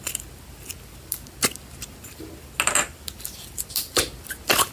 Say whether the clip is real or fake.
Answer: real